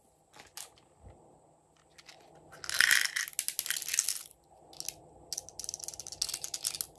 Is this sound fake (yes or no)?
no